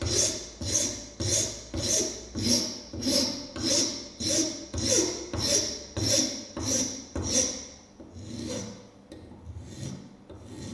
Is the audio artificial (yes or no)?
no